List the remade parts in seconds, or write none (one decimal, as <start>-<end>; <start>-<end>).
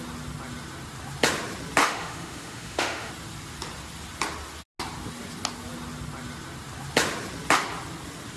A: 1.8-3.1